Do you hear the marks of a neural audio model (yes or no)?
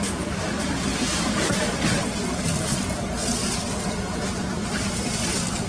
no